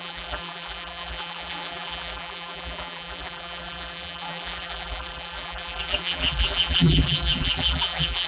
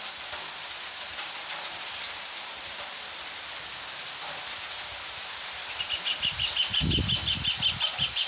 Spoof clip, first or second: first